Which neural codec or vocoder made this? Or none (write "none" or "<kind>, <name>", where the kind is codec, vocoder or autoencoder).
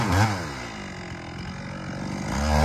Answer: none